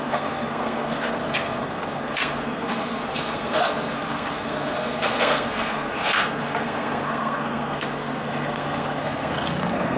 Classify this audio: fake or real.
fake